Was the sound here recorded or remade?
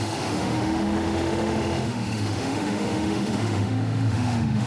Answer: remade